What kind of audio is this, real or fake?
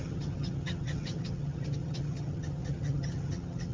fake